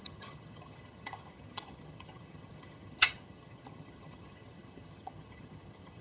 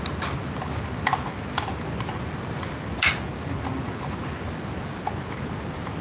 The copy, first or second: first